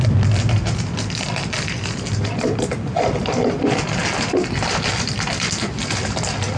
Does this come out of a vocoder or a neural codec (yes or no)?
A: no